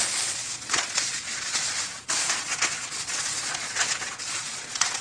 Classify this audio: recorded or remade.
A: remade